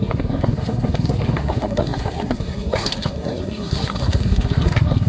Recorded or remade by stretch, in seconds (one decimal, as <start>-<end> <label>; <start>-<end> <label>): 0.0-5.1 remade